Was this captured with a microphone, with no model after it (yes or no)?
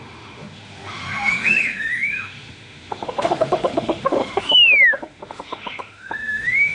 no